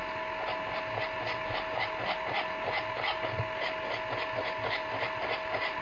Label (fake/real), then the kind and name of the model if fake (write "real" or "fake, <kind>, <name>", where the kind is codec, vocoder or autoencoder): real